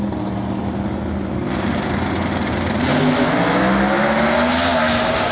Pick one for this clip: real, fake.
real